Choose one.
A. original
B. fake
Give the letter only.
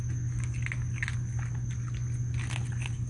A